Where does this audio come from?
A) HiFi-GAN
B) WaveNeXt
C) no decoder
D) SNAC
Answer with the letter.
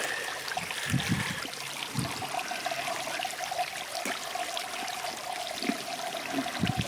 C